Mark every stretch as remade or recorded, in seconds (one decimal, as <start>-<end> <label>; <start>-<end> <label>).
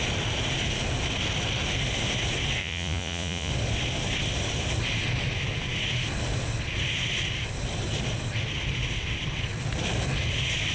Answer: 0.0-2.6 recorded; 2.6-3.5 remade; 3.5-10.7 recorded